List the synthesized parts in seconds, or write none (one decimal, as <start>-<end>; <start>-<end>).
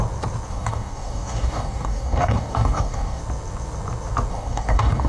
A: 0.5-3.2; 4.3-5.1